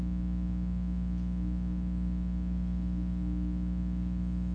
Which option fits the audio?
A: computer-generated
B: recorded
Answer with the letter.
B